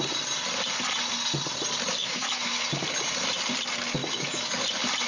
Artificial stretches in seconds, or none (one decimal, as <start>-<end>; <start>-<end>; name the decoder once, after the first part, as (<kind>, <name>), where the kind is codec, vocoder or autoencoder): 2.0-2.6 (autoencoder, DAC-VAE); 4.0-4.6